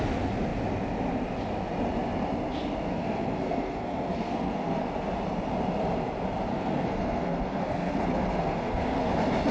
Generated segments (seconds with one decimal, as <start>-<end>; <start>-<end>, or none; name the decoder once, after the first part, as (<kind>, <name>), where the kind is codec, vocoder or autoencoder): 2.9-4.8 (codec, SNAC); 6.5-9.1